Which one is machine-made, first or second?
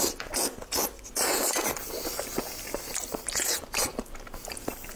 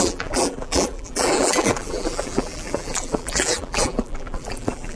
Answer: second